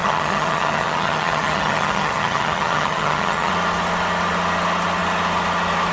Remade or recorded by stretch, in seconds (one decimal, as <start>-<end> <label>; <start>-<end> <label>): 0.0-3.5 remade; 3.5-5.9 recorded